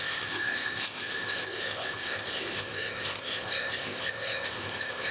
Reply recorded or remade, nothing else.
remade